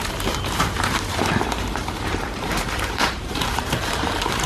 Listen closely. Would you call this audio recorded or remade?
remade